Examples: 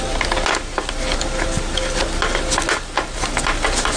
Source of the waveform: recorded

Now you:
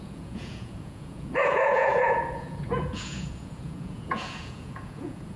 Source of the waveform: remade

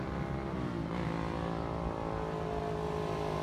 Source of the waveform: recorded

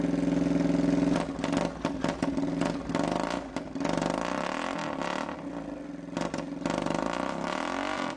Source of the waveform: recorded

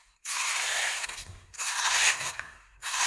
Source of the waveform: remade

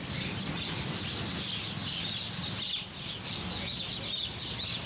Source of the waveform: recorded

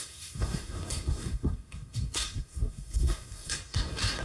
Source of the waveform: remade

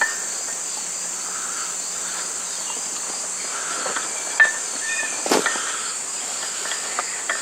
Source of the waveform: recorded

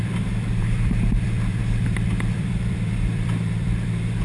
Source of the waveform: remade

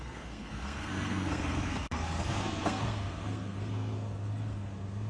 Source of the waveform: remade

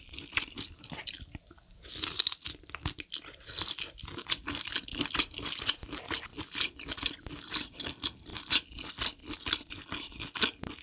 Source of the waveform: recorded